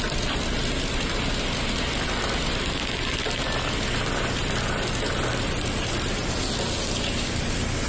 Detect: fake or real real